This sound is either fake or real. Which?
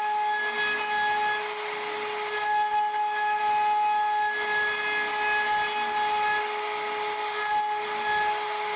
real